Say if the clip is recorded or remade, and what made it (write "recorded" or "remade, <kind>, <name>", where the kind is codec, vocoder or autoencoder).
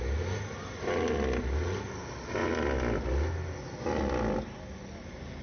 recorded